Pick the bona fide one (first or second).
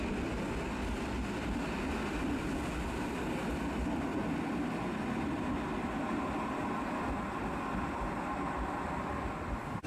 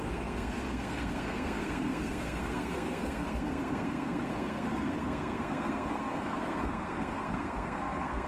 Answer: first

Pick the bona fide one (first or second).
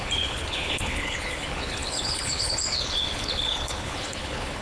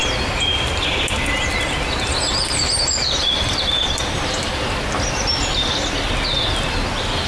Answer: second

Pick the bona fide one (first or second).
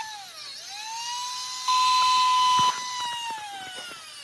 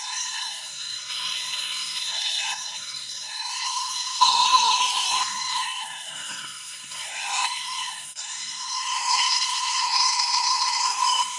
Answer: first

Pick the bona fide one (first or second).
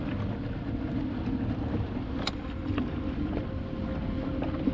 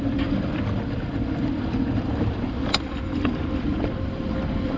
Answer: first